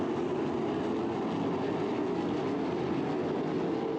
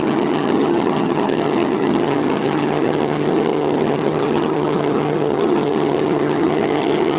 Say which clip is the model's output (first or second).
second